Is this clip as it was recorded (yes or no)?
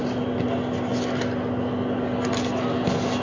yes